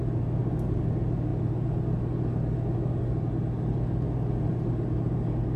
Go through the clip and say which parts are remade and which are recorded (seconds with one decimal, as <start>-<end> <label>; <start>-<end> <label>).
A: 0.0-5.6 recorded